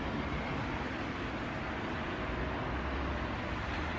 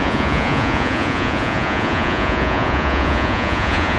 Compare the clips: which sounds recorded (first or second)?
first